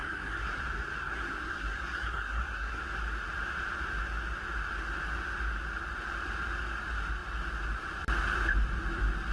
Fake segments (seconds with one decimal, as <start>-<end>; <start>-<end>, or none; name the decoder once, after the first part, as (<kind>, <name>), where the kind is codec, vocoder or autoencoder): 0.0-0.6 (codec, SNAC); 1.0-2.8